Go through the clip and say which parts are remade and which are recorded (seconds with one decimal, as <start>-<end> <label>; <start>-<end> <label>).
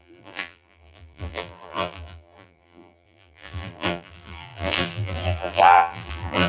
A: 0.0-6.5 remade